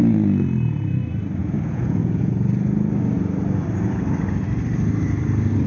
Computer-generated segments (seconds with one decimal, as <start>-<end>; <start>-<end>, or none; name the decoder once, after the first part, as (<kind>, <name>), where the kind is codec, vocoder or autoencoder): 1.4-2.3 (vocoder, Vocos)